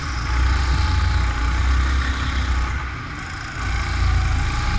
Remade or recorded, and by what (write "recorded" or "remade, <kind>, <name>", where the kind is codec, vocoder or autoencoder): recorded